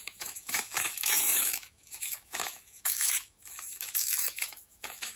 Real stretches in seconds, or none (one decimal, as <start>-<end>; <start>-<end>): none